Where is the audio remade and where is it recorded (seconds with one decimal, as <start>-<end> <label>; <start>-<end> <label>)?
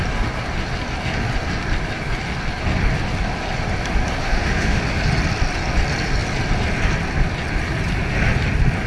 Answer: 0.0-4.2 recorded; 4.2-4.8 remade; 4.8-8.9 recorded